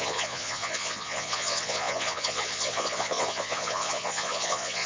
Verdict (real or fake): fake